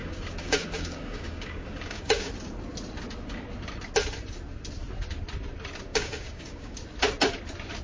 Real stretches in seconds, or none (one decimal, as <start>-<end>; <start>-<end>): 2.3-5.9; 6.8-7.8